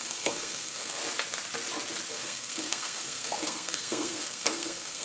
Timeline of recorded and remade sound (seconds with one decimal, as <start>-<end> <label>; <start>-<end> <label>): 0.0-1.0 remade; 1.0-2.1 recorded; 2.1-5.0 remade